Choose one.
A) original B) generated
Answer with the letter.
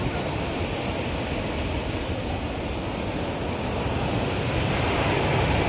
A